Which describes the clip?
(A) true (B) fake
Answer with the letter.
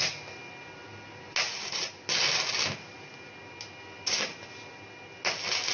A